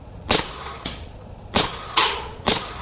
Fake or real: fake